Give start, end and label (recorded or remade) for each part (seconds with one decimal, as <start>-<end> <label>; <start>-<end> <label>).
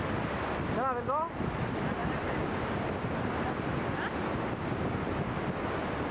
0.0-6.1 recorded